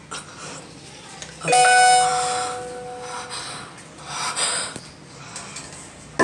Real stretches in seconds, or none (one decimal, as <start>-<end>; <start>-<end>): 0.0-6.2